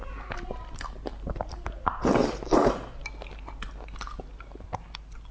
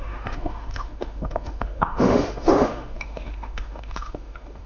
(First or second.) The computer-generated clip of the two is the second